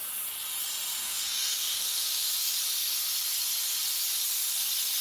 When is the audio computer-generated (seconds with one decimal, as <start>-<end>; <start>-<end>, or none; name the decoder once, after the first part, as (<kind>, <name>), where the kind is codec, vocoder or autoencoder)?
1.0-2.5 (codec, DAC)